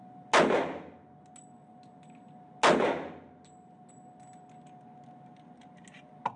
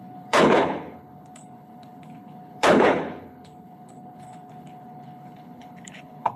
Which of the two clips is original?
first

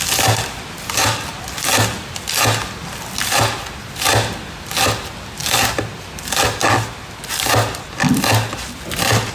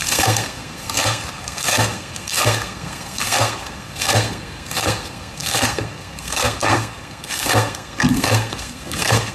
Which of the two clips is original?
first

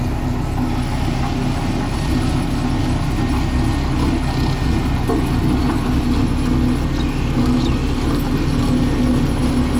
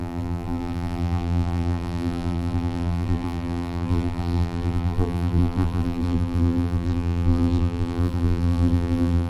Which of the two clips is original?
first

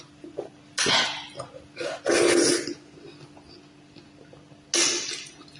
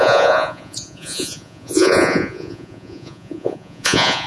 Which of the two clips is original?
first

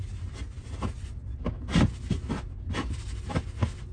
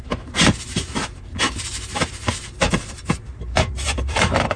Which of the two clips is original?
first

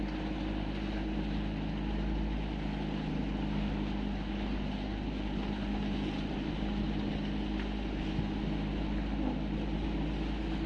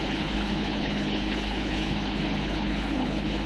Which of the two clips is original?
first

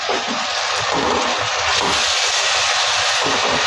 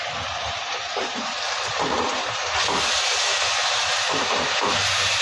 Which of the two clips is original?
first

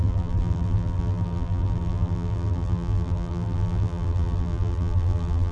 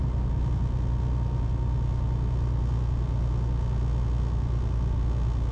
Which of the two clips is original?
second